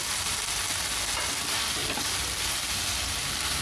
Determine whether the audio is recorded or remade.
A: recorded